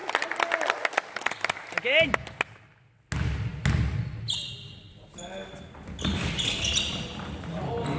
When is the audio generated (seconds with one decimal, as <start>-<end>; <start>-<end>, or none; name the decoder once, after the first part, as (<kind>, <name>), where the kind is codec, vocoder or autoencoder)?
none

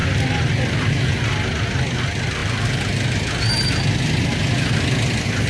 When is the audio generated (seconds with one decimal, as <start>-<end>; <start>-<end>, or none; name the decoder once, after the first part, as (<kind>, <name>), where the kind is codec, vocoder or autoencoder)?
none

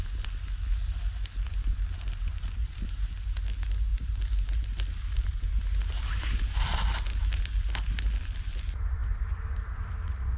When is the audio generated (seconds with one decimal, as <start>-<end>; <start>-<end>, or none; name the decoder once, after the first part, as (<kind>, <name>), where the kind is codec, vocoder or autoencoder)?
2.6-3.1 (vocoder, BigVGAN v2); 3.9-6.8

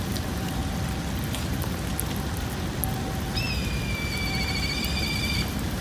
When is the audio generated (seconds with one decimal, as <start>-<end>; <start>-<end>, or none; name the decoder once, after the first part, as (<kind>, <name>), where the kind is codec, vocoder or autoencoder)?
0.0-0.6 (vocoder, BigVGAN v2); 1.3-1.9; 5.0-5.8

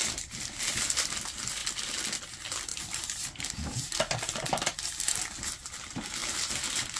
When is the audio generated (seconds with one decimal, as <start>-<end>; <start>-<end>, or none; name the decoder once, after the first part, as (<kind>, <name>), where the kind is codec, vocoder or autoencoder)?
2.7-3.7 (vocoder, BigVGAN v2)